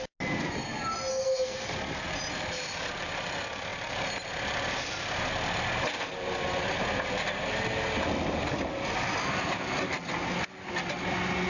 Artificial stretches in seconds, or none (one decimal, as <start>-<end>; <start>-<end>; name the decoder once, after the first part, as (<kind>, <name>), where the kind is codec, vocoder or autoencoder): 1.1-1.7 (codec, SNAC)